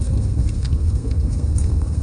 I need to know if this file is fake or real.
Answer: fake